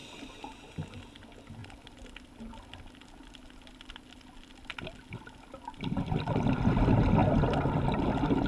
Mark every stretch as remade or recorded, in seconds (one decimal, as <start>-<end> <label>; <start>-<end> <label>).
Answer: 0.0-8.5 recorded